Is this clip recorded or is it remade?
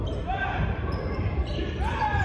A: remade